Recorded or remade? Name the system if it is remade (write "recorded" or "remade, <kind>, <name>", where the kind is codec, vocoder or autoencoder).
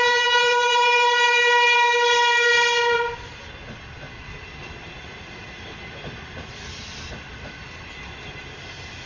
recorded